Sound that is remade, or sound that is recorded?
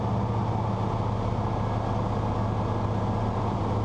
recorded